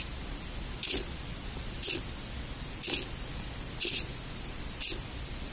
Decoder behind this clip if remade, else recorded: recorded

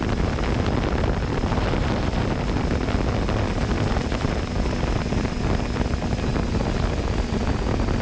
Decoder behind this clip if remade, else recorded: recorded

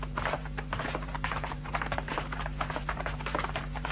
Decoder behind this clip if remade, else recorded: remade, vocoder, BigVGAN v2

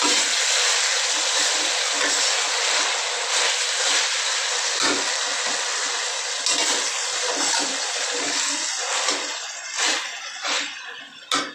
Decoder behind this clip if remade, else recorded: recorded